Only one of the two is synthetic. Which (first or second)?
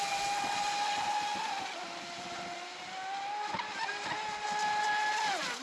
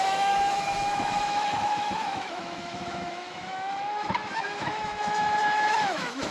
second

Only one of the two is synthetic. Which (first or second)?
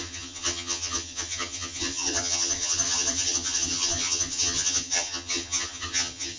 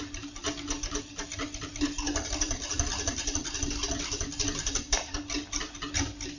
first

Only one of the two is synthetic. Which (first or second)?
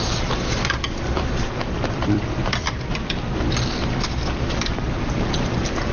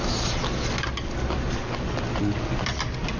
first